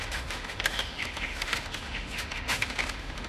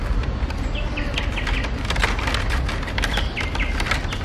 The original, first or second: second